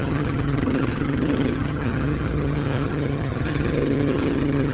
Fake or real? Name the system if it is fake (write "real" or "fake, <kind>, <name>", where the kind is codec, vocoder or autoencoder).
fake, vocoder, HiFi-GAN